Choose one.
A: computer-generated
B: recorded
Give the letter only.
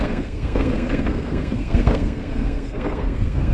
A